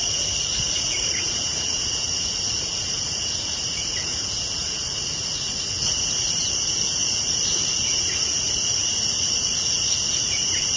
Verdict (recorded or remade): remade